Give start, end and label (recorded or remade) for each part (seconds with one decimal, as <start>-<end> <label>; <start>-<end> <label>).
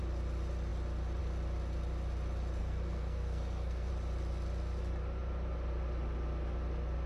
0.0-2.6 recorded; 2.6-3.9 remade; 3.9-7.1 recorded